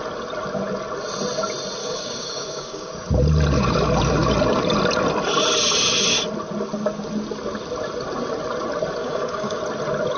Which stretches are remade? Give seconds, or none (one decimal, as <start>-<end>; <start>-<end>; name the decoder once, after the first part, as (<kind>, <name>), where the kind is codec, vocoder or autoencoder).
1.8-2.9 (codec, DAC); 9.0-9.6